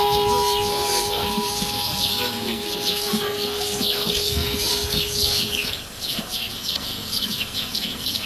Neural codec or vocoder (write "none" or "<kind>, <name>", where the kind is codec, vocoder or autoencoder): codec, SNAC